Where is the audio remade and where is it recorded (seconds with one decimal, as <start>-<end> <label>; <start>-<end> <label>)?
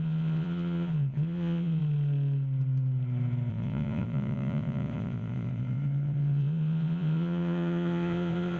0.0-1.8 remade; 1.8-3.5 recorded; 3.5-8.6 remade